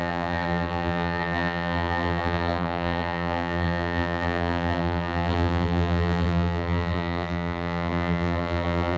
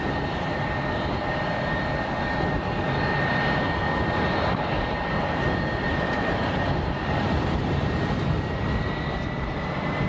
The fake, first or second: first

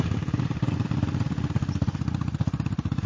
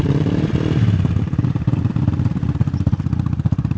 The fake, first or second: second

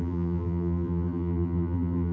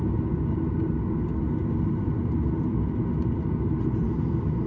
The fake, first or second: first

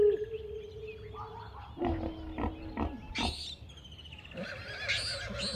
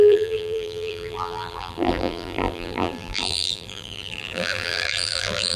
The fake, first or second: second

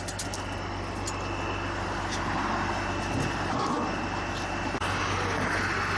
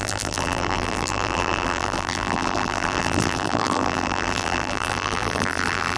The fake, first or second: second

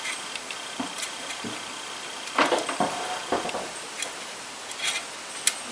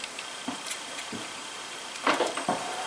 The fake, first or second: second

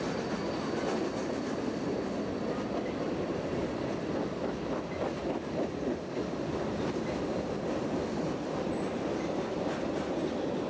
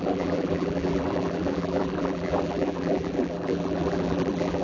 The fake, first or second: second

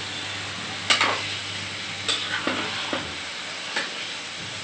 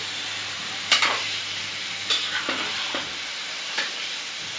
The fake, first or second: second